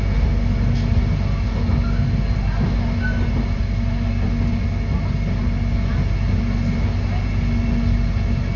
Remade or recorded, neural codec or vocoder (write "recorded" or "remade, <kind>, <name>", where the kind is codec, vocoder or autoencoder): recorded